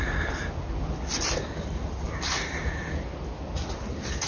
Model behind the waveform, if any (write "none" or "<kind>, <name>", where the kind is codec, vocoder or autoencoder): none